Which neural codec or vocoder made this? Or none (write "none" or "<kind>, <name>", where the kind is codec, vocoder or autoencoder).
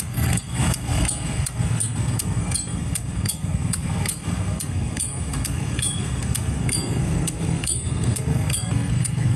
codec, SNAC